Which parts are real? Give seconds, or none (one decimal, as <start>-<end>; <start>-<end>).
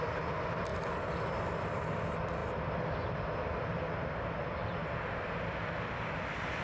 0.0-6.6